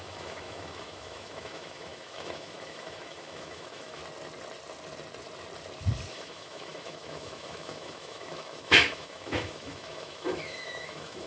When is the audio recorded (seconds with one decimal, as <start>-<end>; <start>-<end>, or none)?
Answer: 4.0-6.1